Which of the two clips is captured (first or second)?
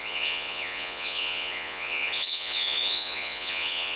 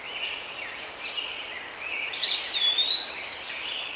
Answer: second